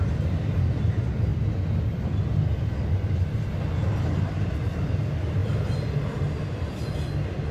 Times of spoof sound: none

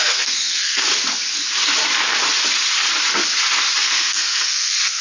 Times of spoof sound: 0.0-0.9 (codec, SNAC); 3.8-5.0

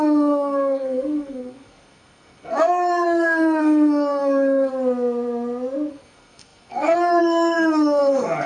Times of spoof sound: 0.0-4.7 (codec, SNAC); 5.9-8.5